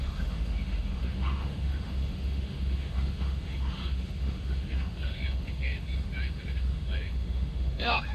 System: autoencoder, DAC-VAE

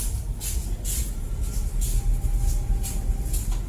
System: none